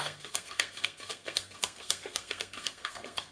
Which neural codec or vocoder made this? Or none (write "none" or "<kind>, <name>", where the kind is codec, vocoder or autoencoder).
codec, SNAC